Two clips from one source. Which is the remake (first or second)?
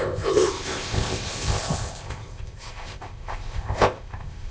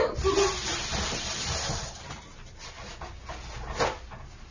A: first